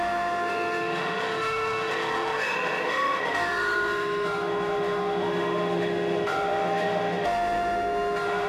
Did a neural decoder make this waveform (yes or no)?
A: yes